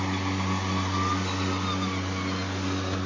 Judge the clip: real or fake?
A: real